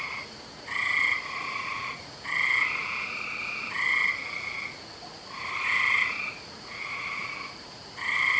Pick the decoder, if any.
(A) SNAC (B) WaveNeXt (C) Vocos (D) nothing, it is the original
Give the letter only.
C